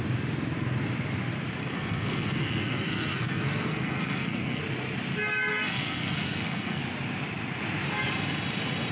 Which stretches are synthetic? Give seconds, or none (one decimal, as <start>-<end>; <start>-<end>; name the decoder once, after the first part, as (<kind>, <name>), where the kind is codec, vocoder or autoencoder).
1.6-4.6 (codec, SNAC); 5.5-6.8